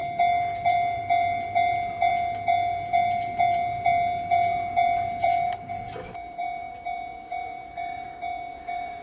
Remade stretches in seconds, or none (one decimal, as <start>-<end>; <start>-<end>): 0.0-9.0